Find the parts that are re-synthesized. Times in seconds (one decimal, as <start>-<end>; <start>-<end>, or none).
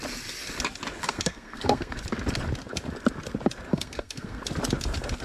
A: 1.0-2.0; 3.7-4.4